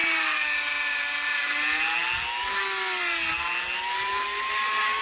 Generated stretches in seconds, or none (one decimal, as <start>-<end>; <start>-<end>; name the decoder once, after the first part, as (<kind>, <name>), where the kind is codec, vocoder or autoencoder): none

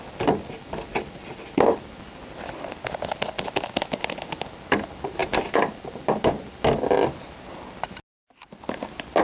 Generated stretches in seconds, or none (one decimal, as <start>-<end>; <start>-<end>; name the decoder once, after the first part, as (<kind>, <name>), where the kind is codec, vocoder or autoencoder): none

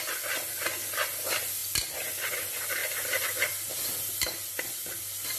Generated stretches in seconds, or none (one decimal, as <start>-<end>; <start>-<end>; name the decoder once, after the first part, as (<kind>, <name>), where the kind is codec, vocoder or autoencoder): 2.8-3.5 (vocoder, BigVGAN v2)

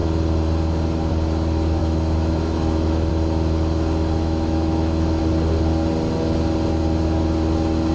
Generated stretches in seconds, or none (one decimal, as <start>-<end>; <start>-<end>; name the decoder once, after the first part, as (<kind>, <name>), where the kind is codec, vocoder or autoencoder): 1.8-3.1 (autoencoder, DAC-VAE); 4.2-5.2

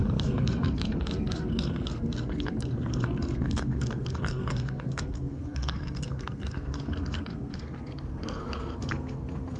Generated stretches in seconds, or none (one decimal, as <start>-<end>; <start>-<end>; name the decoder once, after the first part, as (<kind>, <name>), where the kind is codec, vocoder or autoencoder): 0.0-9.6 (codec, SNAC)

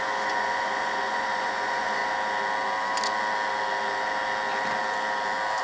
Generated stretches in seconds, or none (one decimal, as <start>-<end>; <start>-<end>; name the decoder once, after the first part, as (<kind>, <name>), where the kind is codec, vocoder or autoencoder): 0.0-2.0 (vocoder, Vocos)

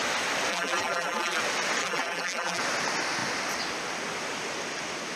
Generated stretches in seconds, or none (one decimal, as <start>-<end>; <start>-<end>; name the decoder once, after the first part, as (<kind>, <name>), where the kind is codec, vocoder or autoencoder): 0.5-1.4 (vocoder, BigVGAN v2); 1.8-2.6